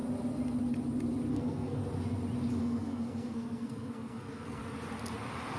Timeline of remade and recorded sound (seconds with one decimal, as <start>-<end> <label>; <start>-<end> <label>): 0.0-1.3 recorded; 1.3-1.8 remade; 1.8-2.6 recorded; 2.6-4.6 remade; 4.6-5.6 recorded